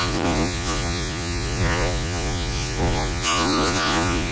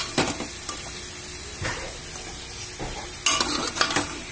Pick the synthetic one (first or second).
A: first